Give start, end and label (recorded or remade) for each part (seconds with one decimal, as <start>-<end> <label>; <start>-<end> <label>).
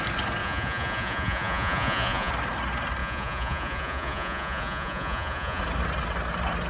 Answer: 0.0-0.4 recorded; 0.4-2.3 remade; 2.3-3.0 recorded; 3.0-5.6 remade; 5.6-6.7 recorded